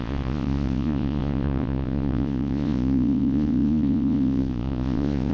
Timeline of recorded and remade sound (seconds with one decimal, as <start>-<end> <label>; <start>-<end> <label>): 0.0-5.3 remade